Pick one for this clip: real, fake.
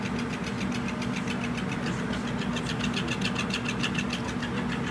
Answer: real